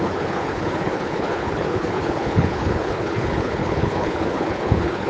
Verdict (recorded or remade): remade